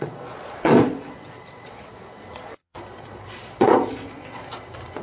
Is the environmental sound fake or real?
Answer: fake